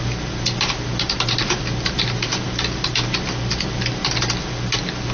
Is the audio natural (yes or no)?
yes